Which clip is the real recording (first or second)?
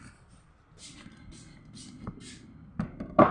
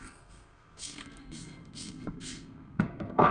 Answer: first